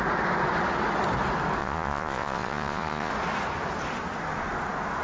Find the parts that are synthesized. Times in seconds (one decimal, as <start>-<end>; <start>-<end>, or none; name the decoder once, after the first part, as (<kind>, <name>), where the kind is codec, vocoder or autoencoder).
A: 1.6-3.1 (vocoder, Vocos)